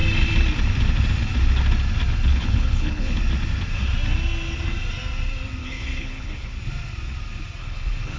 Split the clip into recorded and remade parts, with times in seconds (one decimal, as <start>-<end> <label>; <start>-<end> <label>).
0.0-2.3 recorded; 2.3-3.2 remade; 3.2-5.6 recorded; 5.6-6.5 remade; 6.5-7.6 recorded; 7.6-8.2 remade